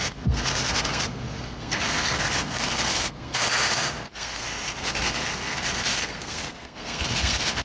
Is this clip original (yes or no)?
no